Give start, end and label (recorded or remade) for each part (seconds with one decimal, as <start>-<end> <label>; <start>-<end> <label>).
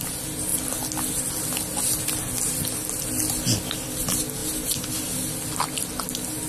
0.0-6.5 recorded